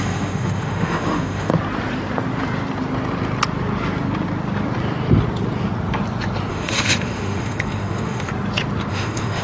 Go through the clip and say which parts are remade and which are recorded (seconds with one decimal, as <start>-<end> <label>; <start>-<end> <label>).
0.0-1.5 remade; 1.5-6.5 recorded; 6.5-8.3 remade; 8.3-8.9 recorded; 8.9-9.4 remade